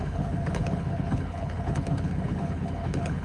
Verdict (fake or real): fake